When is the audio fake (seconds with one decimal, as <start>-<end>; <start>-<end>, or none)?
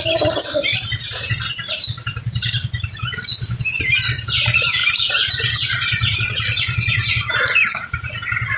0.0-8.6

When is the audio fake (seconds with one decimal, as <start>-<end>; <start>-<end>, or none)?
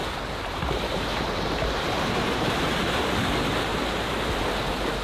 0.0-2.8; 3.7-4.4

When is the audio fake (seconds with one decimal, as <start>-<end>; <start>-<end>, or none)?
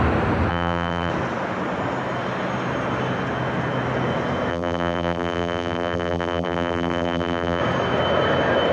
0.5-1.1; 4.5-7.6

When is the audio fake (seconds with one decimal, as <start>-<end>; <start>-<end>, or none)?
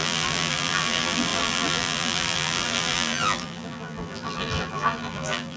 0.0-5.6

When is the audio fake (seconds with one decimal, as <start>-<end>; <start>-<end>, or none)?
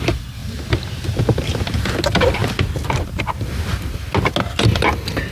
0.0-0.4; 1.0-3.7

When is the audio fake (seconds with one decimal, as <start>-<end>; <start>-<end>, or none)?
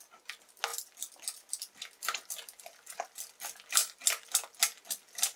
none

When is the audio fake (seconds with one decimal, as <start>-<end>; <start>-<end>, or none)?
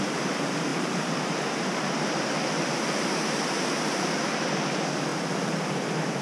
0.7-4.4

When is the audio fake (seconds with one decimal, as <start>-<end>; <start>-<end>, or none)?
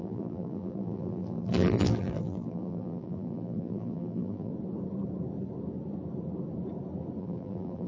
0.0-4.5; 7.2-7.9